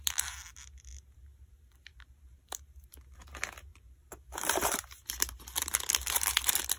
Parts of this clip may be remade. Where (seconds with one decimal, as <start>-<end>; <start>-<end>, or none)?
0.9-2.9; 3.7-5.4